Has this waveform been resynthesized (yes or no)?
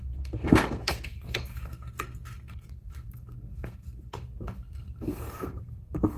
yes